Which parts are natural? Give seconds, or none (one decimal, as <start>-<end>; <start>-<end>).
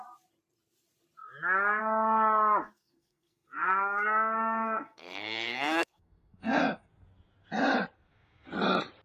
0.0-2.6; 6.9-9.0